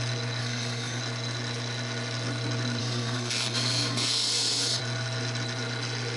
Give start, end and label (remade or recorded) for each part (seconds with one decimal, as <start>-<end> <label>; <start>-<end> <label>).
0.0-0.4 recorded; 0.4-1.0 remade; 1.0-2.8 recorded; 2.8-4.8 remade; 4.8-6.2 recorded